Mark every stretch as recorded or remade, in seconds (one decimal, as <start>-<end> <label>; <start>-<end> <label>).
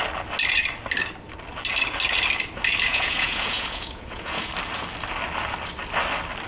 0.0-2.9 recorded; 2.9-4.5 remade; 4.5-6.5 recorded